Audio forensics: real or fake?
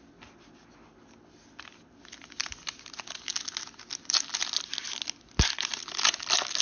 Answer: real